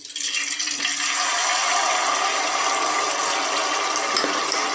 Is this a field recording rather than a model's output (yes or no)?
yes